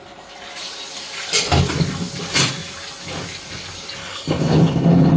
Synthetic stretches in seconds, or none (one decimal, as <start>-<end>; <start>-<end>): 4.0-5.2